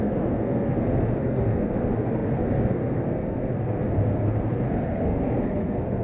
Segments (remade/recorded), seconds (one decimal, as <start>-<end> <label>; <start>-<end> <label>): 0.0-6.0 remade